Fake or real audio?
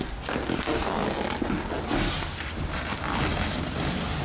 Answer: real